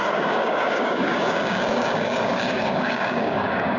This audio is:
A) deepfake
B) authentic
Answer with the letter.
A